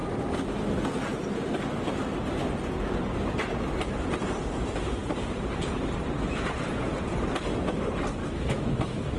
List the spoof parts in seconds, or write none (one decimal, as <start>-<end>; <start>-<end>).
8.2-9.2